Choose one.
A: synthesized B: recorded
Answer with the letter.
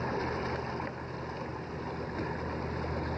B